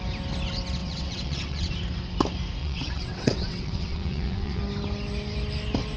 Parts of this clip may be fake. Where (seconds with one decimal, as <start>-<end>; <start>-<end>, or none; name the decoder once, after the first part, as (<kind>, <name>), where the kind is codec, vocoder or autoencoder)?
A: 0.8-1.7 (vocoder, WaveNeXt); 2.6-4.6